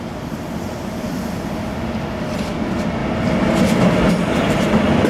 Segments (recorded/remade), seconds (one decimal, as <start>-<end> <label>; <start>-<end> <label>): 0.0-5.1 recorded